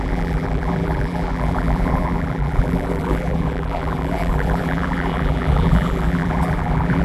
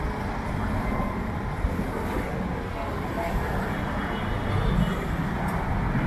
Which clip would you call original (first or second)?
second